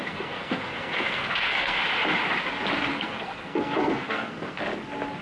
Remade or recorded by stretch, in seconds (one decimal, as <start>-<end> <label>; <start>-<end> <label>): 0.0-1.8 remade; 1.8-2.9 recorded; 2.9-4.6 remade; 4.6-5.2 recorded